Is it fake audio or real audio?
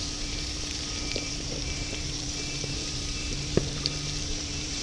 fake